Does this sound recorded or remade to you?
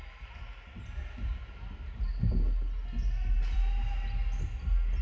recorded